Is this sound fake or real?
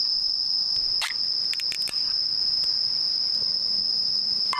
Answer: real